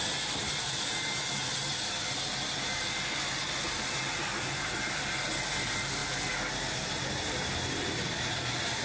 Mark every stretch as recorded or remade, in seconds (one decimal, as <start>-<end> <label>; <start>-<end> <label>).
0.0-8.8 recorded